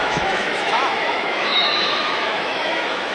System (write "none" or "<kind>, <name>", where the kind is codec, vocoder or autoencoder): autoencoder, DAC-VAE